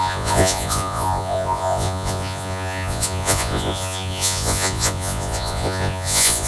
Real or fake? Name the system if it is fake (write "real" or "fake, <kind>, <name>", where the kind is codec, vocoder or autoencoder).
fake, vocoder, Vocos